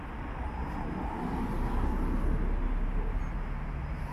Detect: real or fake real